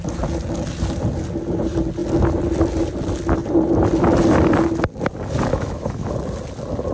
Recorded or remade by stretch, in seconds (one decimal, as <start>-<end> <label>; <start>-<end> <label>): 0.0-5.5 recorded; 5.5-6.1 remade; 6.1-6.9 recorded